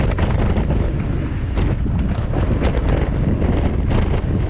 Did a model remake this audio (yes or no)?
no